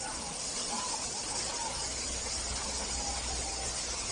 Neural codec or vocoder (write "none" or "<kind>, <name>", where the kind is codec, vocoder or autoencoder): none